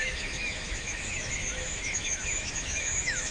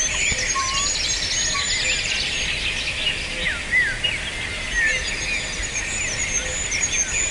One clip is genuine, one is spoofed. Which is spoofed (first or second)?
first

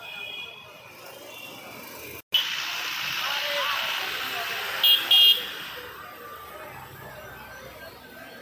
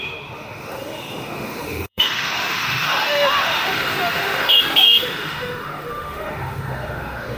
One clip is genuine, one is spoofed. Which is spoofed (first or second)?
second